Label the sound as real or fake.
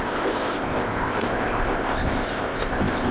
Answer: fake